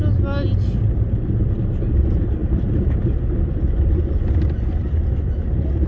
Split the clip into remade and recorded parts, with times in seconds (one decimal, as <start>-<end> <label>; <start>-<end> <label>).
0.0-5.9 recorded